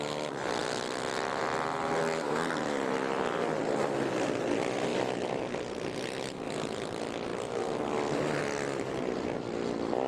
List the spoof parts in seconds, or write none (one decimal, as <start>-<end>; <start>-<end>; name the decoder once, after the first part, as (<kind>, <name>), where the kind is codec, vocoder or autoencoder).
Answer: none